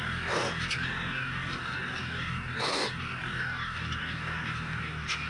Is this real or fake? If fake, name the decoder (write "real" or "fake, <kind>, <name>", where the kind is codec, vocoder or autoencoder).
fake, codec, DAC